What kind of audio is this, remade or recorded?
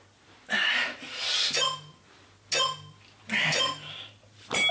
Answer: recorded